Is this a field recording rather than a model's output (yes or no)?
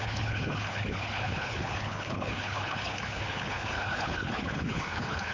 no